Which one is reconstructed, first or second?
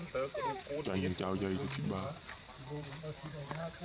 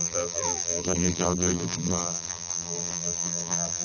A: second